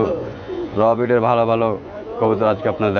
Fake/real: fake